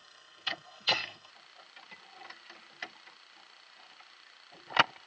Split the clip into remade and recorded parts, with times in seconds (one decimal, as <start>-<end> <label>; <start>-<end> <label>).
0.0-1.3 remade; 1.3-5.1 recorded